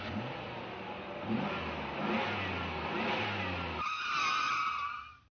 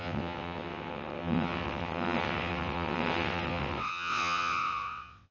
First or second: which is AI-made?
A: second